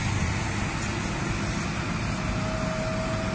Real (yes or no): yes